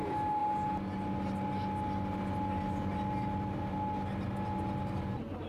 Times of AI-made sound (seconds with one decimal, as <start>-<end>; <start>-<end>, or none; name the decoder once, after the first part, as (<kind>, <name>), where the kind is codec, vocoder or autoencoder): none

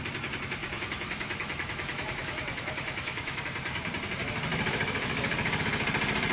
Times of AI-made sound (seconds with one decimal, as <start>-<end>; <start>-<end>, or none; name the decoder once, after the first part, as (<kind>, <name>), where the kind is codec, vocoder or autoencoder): 0.6-3.4 (autoencoder, DAC-VAE); 4.5-5.6

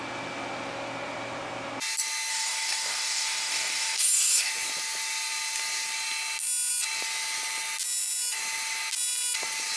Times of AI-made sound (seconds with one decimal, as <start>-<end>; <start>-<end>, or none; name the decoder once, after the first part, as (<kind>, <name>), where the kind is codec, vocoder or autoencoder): 2.3-4.5 (codec, DAC)

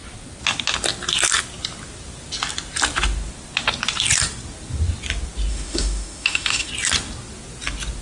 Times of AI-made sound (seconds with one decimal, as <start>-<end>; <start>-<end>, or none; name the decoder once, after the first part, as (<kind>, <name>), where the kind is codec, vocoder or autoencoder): 5.5-6.7 (autoencoder, DAC-VAE)

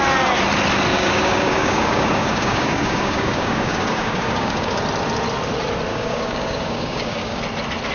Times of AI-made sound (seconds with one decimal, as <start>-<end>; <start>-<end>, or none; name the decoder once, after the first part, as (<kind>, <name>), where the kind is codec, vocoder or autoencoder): 0.9-4.8 (codec, DAC); 5.9-7.4

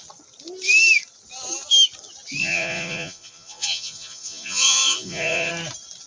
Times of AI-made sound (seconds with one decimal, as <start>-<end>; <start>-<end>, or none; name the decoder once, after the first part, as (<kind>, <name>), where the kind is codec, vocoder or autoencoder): 2.4-5.5 (vocoder, Vocos)

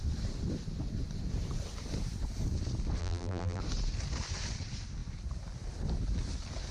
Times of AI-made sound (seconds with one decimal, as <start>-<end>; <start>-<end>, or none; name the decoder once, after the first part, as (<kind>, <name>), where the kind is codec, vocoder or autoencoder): 3.0-3.6 (vocoder, BigVGAN v2)

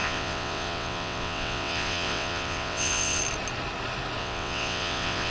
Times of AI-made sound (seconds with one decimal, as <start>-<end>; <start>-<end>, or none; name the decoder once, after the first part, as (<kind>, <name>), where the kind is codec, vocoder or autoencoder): 0.0-3.2 (vocoder, WaveNeXt); 4.2-5.3